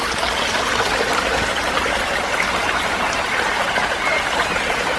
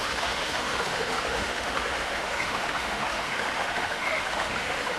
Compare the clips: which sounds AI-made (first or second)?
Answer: second